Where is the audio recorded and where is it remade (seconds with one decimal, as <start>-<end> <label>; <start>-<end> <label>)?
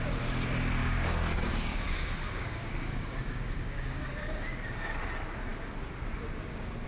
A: 0.0-0.8 recorded; 0.8-4.9 remade; 4.9-6.9 recorded